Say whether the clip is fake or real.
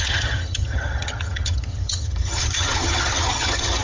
fake